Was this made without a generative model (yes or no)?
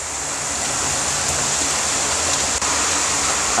yes